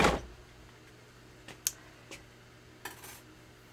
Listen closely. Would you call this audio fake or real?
real